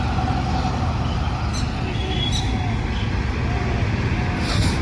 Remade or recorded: recorded